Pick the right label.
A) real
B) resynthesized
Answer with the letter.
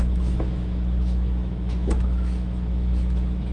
B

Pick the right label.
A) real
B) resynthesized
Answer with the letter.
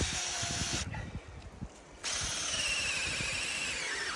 A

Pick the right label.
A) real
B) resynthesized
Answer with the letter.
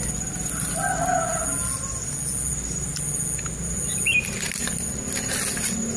A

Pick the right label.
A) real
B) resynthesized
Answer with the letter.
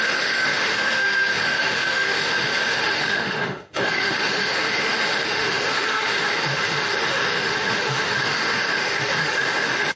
B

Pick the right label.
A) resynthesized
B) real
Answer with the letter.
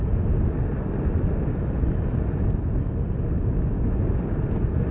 B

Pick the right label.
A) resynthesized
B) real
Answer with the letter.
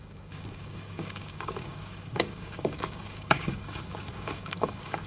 A